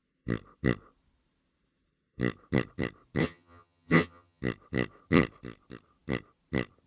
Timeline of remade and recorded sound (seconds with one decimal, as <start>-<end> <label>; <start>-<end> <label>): 0.0-3.2 recorded; 3.2-4.4 remade; 4.4-6.9 recorded